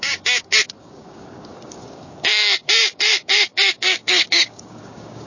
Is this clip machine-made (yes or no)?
yes